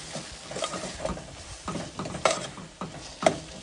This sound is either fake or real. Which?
real